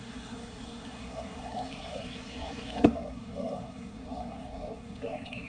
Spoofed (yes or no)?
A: yes